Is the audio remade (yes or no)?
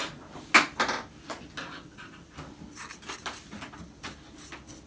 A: no